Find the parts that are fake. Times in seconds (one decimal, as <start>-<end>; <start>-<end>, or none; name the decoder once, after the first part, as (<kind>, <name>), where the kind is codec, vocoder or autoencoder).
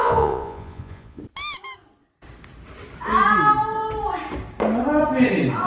0.0-1.2 (vocoder, Vocos)